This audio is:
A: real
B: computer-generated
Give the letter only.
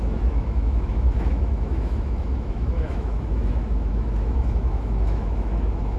B